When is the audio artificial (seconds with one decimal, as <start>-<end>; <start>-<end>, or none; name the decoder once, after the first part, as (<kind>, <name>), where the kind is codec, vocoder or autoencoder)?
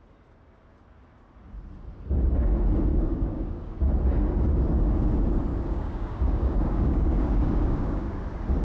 2.9-3.8 (codec, DAC); 5.5-8.2